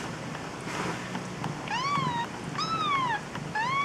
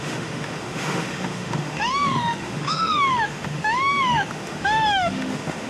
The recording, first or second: first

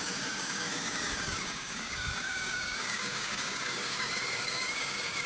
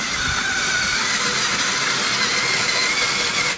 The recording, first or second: second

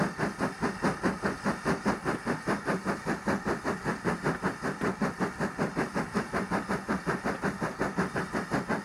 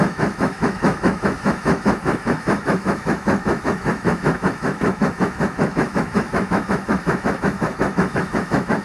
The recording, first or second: first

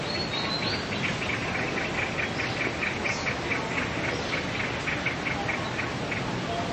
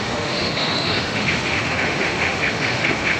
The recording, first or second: first